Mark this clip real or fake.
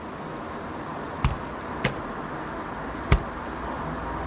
real